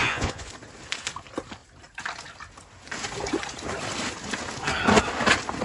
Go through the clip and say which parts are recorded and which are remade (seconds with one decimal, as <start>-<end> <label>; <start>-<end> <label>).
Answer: 0.0-0.5 remade; 0.5-5.6 recorded